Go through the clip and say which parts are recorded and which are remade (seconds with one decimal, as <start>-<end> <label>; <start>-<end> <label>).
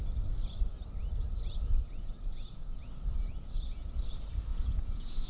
0.0-1.8 recorded; 1.8-2.8 remade; 2.8-3.3 recorded; 3.3-3.9 remade; 3.9-4.5 recorded; 4.5-5.3 remade